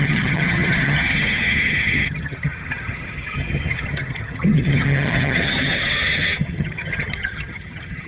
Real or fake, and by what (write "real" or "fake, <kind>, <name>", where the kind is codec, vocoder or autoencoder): fake, vocoder, HiFi-GAN